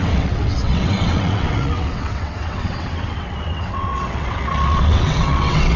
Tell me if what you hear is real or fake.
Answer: fake